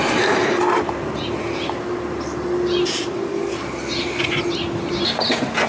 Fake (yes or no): no